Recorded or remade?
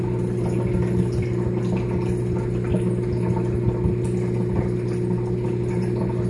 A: recorded